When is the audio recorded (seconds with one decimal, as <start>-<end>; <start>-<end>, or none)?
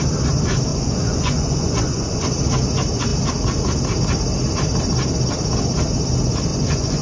0.0-0.7; 2.2-6.5